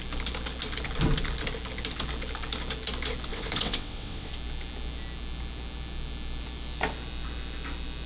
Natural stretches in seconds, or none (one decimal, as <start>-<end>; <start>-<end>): 0.0-3.3; 4.3-8.1

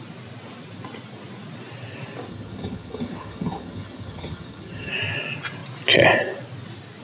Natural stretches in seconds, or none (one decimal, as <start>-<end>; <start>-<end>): 0.0-2.3; 4.9-7.0

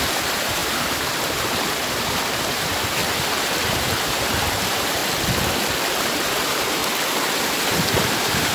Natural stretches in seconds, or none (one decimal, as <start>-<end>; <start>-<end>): 3.0-4.0; 5.0-6.0; 6.8-7.4

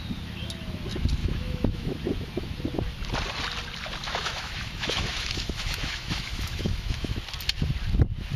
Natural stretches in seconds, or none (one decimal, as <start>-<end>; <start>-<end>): 0.0-1.2; 1.9-4.0; 7.2-8.4

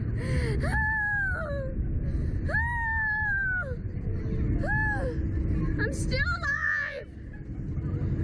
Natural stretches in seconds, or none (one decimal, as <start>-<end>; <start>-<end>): 0.0-6.5; 7.0-8.2

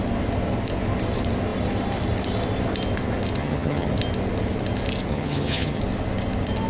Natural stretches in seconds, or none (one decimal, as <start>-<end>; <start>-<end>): 0.0-3.4; 3.9-5.1; 5.8-6.7

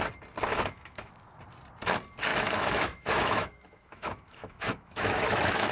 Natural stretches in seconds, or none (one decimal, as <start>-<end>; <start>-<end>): 0.0-0.5; 1.1-2.3

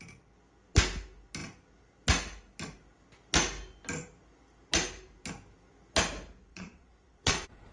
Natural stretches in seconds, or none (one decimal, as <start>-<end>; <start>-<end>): 0.0-6.5